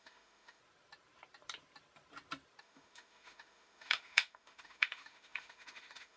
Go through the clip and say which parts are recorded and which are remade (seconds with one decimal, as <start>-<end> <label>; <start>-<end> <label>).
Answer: 0.0-0.6 remade; 0.6-2.6 recorded; 2.6-6.2 remade